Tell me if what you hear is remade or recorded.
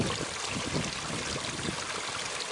recorded